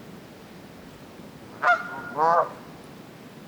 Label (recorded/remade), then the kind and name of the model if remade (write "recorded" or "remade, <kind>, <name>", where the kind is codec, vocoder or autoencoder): recorded